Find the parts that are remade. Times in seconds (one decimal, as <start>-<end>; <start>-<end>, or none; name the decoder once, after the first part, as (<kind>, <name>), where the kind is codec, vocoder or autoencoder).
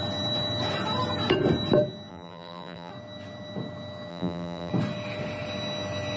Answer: 2.1-2.9 (vocoder, BigVGAN v2); 4.1-4.7